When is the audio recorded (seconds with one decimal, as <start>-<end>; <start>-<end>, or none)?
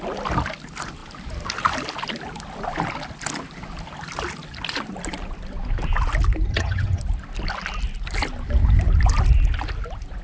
0.0-6.5; 7.0-10.2